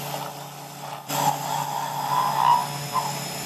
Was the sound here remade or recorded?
recorded